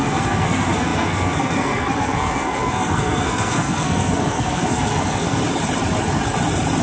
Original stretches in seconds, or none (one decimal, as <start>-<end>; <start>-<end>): 5.4-6.8